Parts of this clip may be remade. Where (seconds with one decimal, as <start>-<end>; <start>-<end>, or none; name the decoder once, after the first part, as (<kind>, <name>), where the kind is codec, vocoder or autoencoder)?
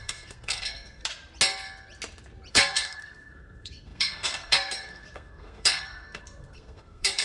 0.0-1.0 (codec, SNAC); 2.5-7.2